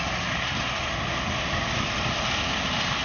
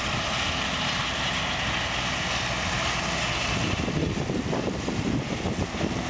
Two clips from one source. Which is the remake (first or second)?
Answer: first